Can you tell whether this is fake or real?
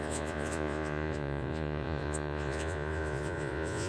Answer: fake